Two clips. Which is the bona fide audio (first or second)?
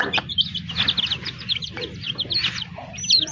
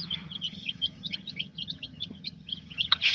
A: first